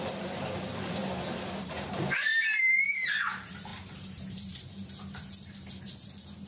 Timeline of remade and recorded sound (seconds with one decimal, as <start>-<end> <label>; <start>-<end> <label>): 0.0-1.0 remade; 1.0-1.6 recorded; 1.6-6.5 remade